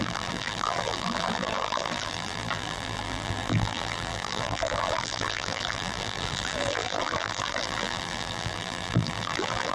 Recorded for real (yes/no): no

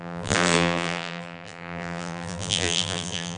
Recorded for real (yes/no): no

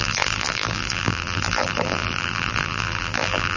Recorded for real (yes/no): no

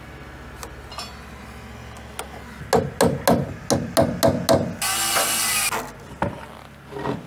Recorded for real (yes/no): yes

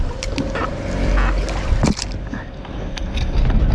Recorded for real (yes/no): yes